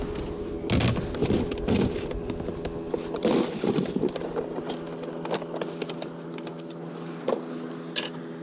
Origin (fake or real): real